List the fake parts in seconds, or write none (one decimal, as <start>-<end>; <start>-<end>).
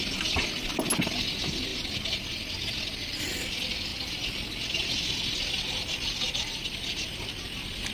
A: none